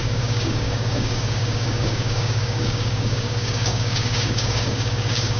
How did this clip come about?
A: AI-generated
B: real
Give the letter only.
A